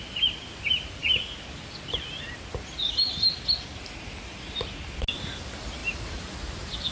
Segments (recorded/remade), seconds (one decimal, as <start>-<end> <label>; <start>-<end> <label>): 0.0-6.9 recorded